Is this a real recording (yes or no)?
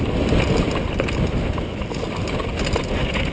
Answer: yes